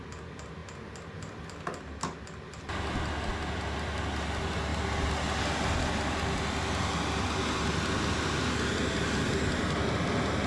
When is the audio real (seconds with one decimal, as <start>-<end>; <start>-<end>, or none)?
0.0-10.5